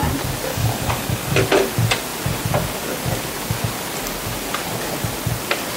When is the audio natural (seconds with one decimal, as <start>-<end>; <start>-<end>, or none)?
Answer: 0.0-0.5; 1.3-5.8